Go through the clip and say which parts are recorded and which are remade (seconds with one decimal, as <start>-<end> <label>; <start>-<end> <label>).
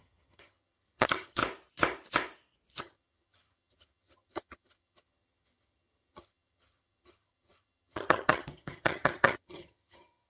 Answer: 0.0-1.4 remade; 1.4-2.8 recorded; 2.8-10.3 remade